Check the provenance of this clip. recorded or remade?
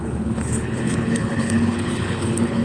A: remade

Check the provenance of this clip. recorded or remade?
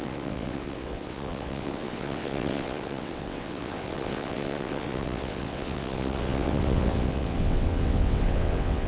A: remade